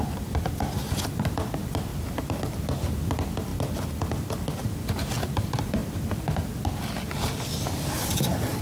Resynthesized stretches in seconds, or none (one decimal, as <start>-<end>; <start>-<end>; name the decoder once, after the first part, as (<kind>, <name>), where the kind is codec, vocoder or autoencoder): 0.0-1.9 (vocoder, BigVGAN v2); 3.1-3.5; 5.2-5.8; 8.1-8.6